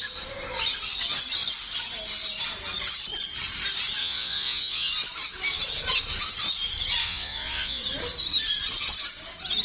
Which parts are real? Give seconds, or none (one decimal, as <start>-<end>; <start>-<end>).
0.0-4.0; 4.9-7.0; 7.8-9.6